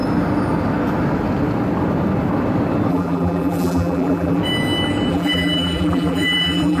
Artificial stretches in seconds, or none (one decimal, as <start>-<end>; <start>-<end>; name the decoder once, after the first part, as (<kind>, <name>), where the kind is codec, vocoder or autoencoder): 2.9-4.4 (vocoder, BigVGAN v2); 5.1-6.8